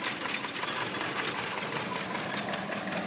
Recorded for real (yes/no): yes